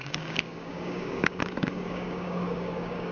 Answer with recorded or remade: remade